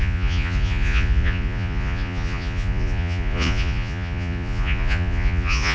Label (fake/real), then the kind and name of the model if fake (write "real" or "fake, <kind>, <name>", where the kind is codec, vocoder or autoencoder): fake, vocoder, Vocos